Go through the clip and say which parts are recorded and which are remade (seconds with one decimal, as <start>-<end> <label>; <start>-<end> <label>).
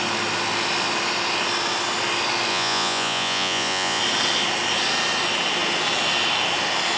0.0-2.5 recorded; 2.5-4.0 remade; 4.0-7.0 recorded